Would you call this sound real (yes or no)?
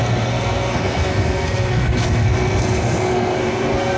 no